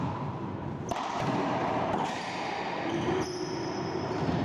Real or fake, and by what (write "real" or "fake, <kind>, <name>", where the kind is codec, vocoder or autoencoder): real